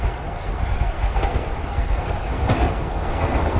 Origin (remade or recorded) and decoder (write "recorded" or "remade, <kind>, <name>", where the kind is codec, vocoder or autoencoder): remade, codec, SNAC